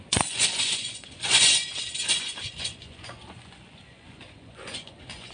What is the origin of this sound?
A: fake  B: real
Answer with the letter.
A